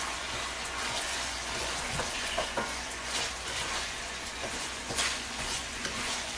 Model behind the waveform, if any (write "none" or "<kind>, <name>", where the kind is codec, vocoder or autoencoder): vocoder, Vocos